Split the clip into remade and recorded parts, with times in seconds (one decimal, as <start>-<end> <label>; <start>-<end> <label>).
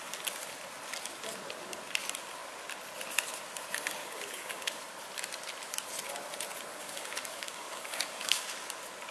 0.0-4.0 recorded; 4.0-4.8 remade; 4.8-6.7 recorded; 6.7-8.5 remade; 8.5-9.1 recorded